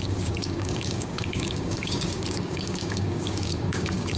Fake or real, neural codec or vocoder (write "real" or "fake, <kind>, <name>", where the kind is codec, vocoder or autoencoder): fake, codec, DAC